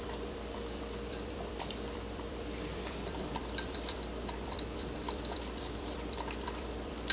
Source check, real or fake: fake